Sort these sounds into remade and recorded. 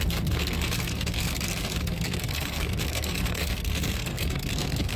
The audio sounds remade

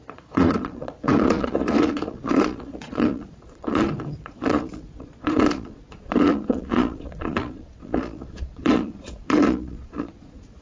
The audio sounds remade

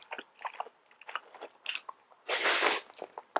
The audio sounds recorded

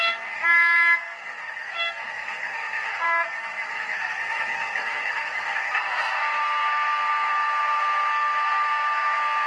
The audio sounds remade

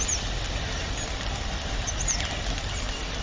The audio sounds recorded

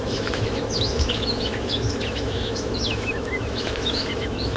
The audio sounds remade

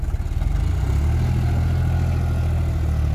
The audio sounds recorded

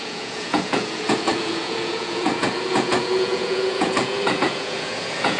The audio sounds remade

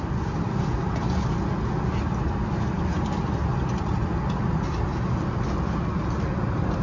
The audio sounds recorded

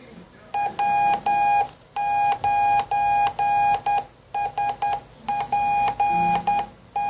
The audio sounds recorded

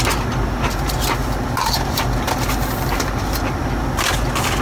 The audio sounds recorded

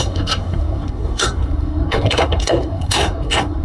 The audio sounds remade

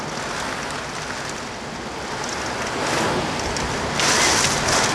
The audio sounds recorded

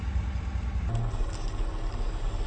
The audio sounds recorded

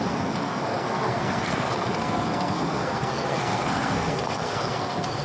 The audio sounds remade